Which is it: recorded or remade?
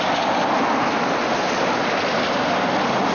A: recorded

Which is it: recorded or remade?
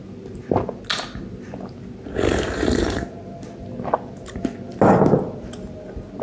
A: recorded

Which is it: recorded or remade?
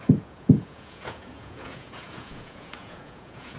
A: remade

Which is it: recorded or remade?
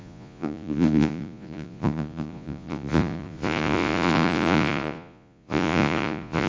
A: remade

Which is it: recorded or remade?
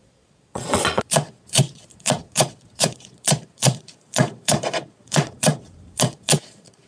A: remade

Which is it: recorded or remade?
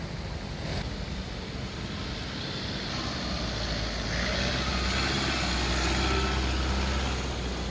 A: recorded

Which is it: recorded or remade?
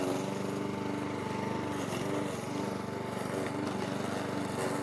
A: recorded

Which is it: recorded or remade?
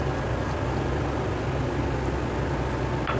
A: recorded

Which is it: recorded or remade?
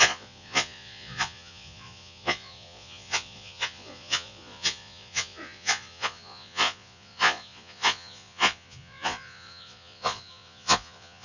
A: remade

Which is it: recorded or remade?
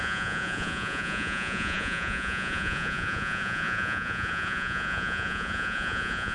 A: remade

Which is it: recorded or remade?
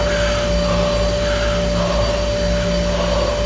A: recorded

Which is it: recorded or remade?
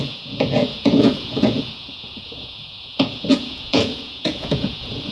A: remade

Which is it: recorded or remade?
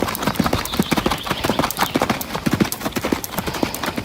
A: recorded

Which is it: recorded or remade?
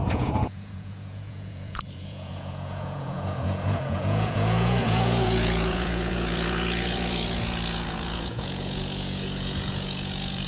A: remade